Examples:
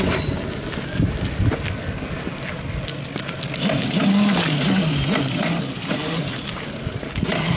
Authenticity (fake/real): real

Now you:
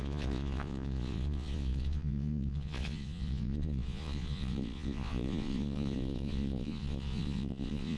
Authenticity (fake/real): fake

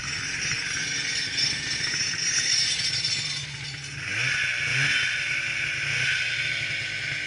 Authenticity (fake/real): real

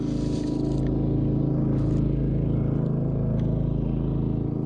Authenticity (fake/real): real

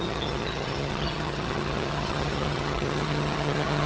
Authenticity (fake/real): fake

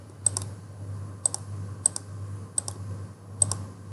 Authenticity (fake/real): real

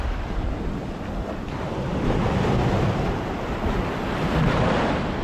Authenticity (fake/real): real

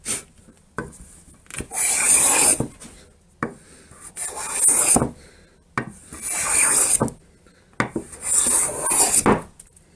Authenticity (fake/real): real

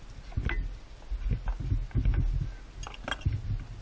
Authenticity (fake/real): real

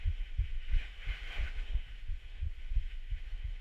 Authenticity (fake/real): fake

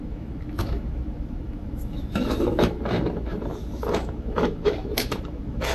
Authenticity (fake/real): fake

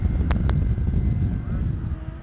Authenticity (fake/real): real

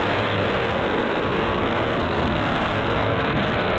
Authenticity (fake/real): fake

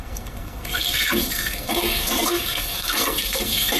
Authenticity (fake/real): fake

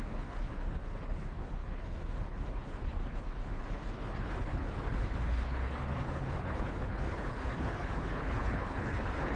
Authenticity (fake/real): fake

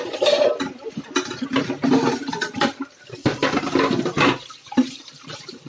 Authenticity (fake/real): real